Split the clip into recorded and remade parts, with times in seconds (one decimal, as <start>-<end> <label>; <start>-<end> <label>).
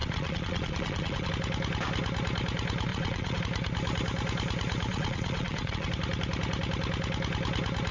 0.0-1.3 remade; 1.3-2.9 recorded; 2.9-3.4 remade; 3.4-4.9 recorded; 4.9-5.9 remade; 5.9-7.9 recorded